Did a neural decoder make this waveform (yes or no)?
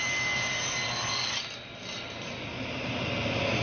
no